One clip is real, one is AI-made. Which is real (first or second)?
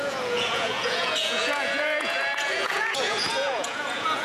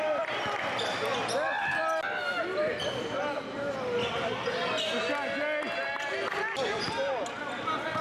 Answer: second